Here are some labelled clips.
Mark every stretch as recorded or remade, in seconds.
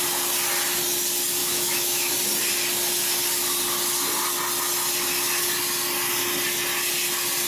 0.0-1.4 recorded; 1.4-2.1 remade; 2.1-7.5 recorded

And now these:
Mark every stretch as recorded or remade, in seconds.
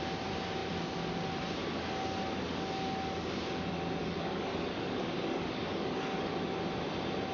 0.0-4.0 recorded; 4.0-6.3 remade; 6.3-7.3 recorded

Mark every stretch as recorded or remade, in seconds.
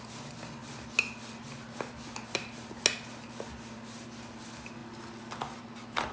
0.0-6.1 recorded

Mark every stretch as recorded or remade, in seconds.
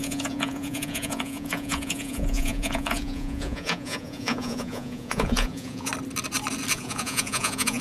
0.0-5.9 remade; 5.9-6.7 recorded; 6.7-7.8 remade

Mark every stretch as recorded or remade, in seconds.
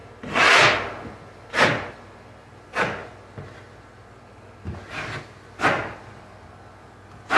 0.0-7.4 recorded